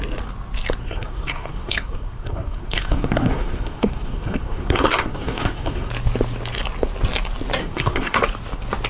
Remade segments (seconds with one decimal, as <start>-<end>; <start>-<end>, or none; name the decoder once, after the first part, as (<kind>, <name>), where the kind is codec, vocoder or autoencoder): 0.8-5.9 (codec, SNAC); 7.6-8.2